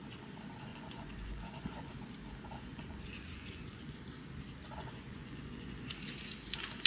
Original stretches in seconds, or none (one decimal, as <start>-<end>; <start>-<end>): 0.0-0.7; 1.9-2.7; 4.0-4.8; 5.9-6.9